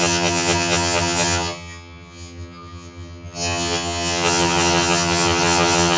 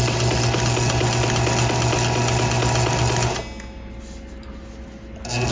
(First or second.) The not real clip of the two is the first